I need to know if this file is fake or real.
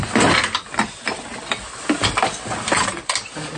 real